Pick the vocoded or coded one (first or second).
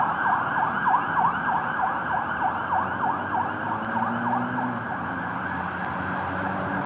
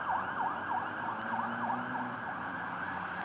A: second